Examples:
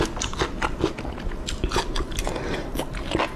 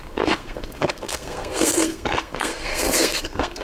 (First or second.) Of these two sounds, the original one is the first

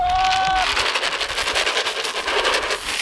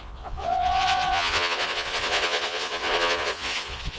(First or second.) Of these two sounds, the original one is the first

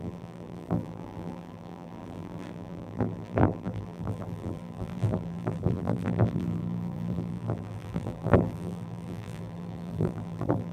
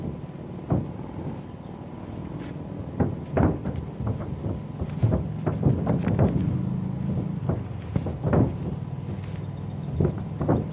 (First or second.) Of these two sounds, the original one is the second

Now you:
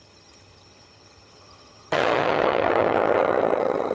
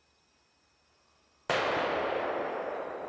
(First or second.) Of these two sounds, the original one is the second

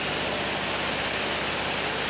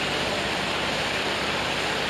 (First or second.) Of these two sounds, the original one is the first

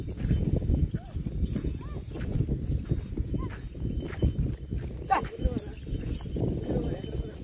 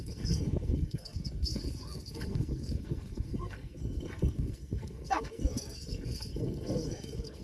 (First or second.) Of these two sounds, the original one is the first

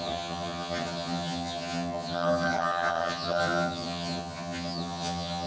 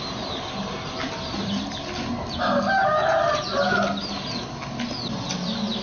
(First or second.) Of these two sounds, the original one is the second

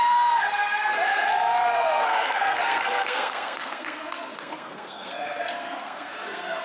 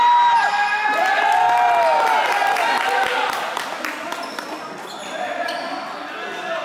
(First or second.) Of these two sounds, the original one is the second